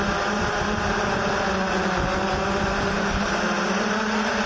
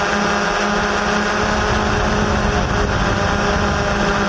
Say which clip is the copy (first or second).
first